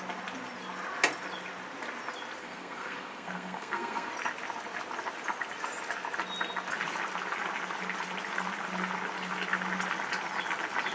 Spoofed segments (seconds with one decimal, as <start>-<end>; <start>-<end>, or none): 2.4-4.1